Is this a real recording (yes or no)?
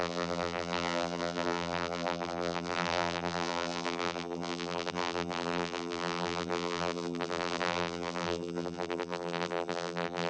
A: no